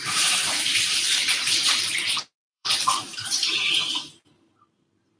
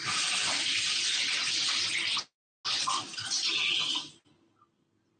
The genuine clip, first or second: second